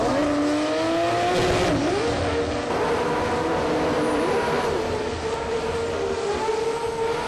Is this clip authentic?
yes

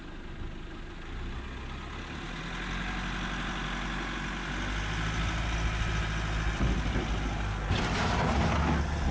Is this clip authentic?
yes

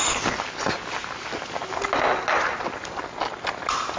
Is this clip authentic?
yes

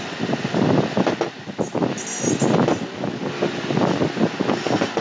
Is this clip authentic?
yes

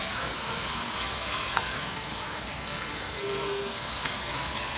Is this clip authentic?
no